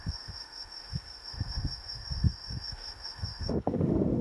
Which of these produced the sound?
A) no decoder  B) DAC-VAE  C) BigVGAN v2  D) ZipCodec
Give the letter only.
B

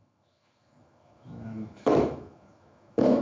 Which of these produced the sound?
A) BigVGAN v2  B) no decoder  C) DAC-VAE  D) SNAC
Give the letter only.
C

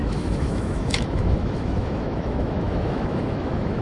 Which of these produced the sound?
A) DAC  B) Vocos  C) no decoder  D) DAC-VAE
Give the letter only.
D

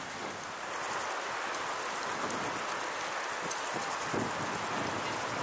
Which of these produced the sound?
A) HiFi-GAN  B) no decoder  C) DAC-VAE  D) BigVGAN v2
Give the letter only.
B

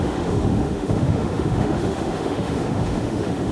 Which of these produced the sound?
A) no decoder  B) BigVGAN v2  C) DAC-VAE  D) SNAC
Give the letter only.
C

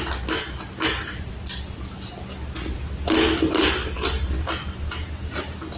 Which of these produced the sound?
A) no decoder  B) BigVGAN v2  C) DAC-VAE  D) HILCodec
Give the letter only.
A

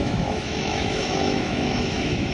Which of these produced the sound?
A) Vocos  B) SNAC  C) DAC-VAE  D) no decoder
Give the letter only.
C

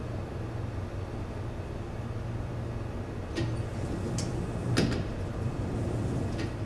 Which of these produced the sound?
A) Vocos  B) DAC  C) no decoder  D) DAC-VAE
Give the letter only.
C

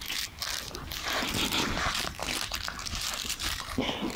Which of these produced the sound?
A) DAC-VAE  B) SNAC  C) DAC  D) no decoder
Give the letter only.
D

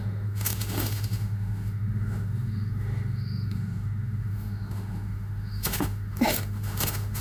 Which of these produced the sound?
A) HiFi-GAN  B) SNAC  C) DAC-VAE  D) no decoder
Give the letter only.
C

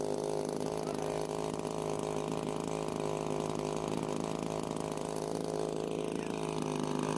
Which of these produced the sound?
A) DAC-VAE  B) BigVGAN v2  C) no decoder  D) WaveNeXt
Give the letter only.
C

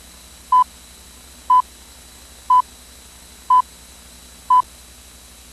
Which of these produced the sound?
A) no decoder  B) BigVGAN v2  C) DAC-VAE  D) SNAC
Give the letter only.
A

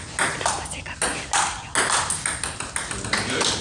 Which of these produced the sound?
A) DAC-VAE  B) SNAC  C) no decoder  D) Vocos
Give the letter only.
C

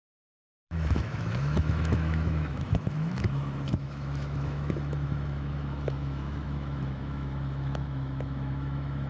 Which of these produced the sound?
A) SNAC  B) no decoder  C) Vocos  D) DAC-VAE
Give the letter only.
D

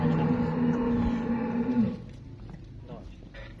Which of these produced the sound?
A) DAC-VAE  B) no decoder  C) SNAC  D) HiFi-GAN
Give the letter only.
B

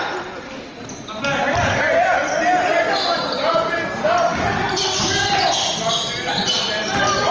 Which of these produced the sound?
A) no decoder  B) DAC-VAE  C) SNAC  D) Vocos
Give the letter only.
A